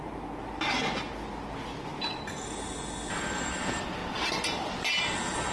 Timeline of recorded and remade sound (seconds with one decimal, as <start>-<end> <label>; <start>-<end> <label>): 0.0-5.5 recorded